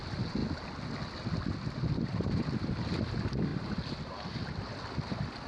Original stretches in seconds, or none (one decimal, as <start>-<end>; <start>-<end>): 0.0-5.5